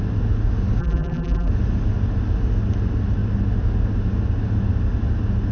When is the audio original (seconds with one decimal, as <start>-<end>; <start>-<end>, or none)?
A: 0.0-0.8; 1.5-5.5